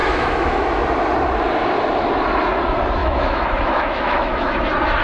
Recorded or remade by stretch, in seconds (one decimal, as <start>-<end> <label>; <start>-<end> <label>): 0.0-0.6 remade; 0.6-3.0 recorded; 3.0-4.6 remade; 4.6-5.0 recorded